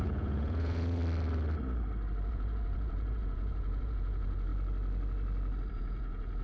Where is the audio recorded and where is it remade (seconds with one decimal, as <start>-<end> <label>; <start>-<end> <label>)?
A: 0.0-1.0 remade; 1.0-2.3 recorded; 2.3-4.5 remade; 4.5-5.7 recorded; 5.7-6.4 remade

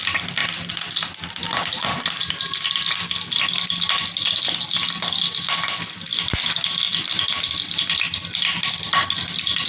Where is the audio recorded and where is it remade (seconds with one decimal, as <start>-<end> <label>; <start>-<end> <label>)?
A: 0.0-9.7 recorded

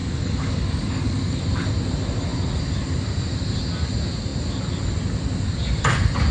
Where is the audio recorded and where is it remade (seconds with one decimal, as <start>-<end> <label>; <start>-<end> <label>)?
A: 0.0-1.4 remade; 1.4-6.3 recorded

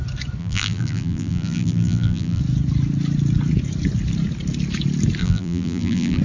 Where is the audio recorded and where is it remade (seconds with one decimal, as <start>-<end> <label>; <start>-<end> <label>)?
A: 0.0-0.4 recorded; 0.4-2.4 remade; 2.4-5.2 recorded; 5.2-6.2 remade

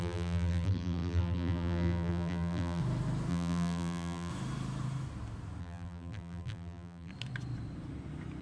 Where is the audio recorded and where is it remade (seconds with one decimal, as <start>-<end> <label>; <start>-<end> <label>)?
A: 0.0-2.8 remade; 2.8-3.3 recorded; 3.3-4.3 remade; 4.3-5.6 recorded; 5.6-7.1 remade; 7.1-8.4 recorded